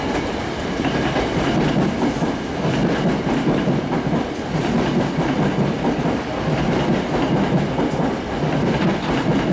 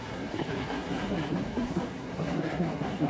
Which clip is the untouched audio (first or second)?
first